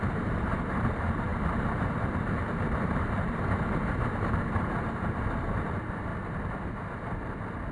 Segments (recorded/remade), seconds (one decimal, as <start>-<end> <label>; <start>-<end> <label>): 0.0-6.1 remade; 6.1-7.7 recorded